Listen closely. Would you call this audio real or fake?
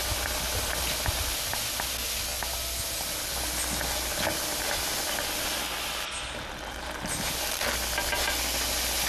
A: real